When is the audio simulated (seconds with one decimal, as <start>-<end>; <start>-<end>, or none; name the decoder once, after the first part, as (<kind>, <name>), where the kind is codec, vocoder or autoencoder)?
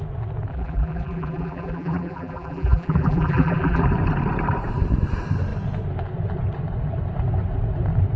0.5-3.8 (vocoder, BigVGAN v2)